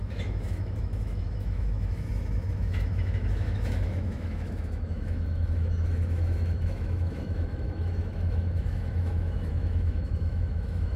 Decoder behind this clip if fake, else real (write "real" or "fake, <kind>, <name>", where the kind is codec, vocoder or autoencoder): fake, autoencoder, DAC-VAE